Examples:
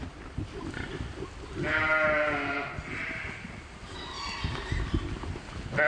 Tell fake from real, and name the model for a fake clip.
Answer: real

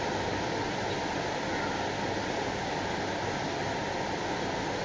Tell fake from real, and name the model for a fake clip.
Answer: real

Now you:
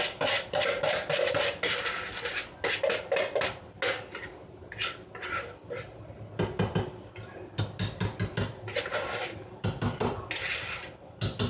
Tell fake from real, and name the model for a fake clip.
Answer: real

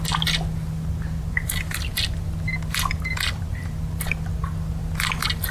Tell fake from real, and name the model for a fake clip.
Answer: real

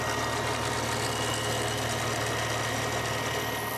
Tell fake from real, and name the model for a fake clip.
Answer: real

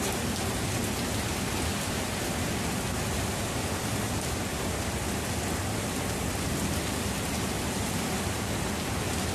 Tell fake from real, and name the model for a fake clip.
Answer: real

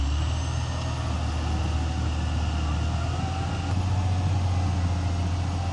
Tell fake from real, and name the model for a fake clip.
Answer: real